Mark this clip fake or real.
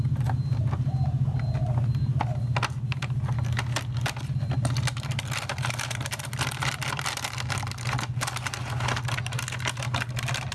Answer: real